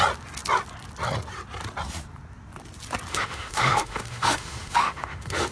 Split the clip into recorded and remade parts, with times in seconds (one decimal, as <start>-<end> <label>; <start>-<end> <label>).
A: 0.0-3.1 recorded; 3.1-5.5 remade

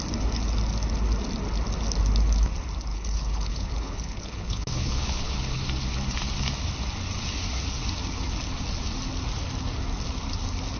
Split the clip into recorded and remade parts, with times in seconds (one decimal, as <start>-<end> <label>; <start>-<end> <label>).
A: 0.0-2.9 recorded; 2.9-5.6 remade; 5.6-10.8 recorded